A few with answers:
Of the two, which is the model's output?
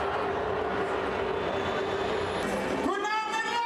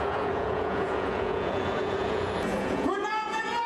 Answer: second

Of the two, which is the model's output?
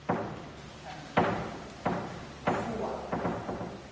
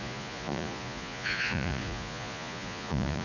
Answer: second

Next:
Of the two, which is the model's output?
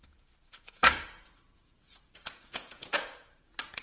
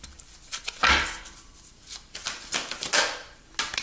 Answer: first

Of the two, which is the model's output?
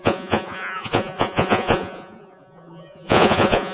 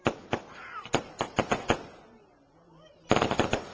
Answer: first